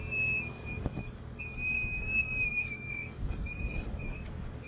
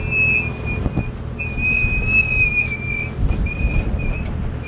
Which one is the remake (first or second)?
first